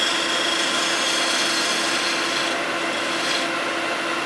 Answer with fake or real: real